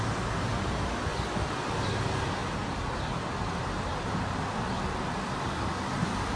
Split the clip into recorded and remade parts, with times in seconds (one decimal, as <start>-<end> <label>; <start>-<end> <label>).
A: 0.0-6.4 recorded